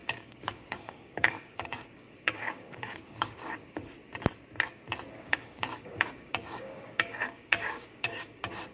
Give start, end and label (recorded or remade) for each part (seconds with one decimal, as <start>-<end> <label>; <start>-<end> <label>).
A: 0.0-4.0 remade; 4.0-5.1 recorded; 5.1-8.7 remade